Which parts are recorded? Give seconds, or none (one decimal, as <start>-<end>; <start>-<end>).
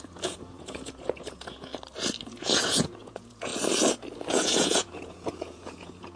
1.7-2.3; 3.5-4.3